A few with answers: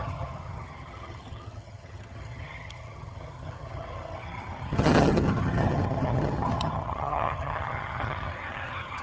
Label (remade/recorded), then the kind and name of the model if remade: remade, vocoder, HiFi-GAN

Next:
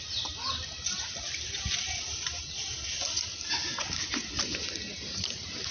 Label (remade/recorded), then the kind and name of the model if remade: recorded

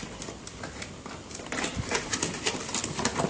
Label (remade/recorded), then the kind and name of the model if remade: recorded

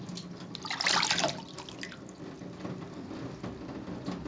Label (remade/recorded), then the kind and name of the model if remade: recorded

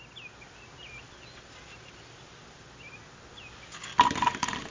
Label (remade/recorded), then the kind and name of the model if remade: recorded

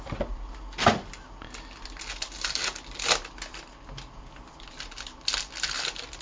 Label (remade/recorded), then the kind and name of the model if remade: recorded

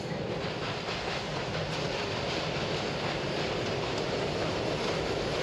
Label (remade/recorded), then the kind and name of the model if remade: recorded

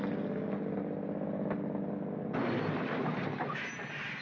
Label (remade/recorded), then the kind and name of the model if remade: recorded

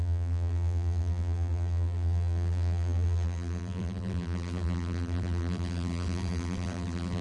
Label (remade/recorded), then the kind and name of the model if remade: remade, vocoder, BigVGAN v2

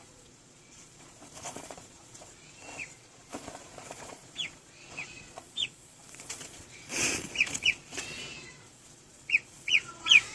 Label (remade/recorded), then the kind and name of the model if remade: remade, vocoder, Vocos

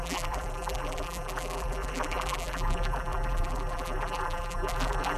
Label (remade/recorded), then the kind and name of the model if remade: remade, vocoder, BigVGAN v2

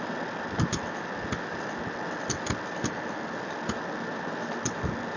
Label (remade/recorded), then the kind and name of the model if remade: recorded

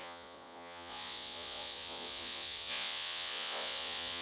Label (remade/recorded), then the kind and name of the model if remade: remade, vocoder, Vocos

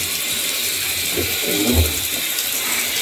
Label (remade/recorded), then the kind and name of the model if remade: recorded